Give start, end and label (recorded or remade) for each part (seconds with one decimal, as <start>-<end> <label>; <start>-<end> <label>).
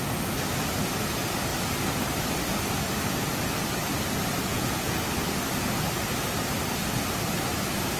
0.0-4.5 recorded; 4.5-5.0 remade; 5.0-8.0 recorded